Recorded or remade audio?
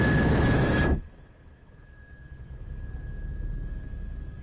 remade